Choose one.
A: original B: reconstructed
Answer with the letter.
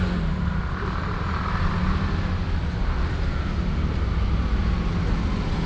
A